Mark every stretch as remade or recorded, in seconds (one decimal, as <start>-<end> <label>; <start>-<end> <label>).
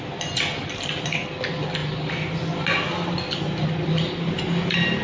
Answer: 0.0-5.0 recorded